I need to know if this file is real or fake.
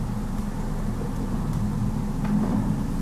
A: real